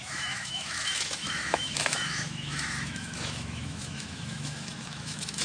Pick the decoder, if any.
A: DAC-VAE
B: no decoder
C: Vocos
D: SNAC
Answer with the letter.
A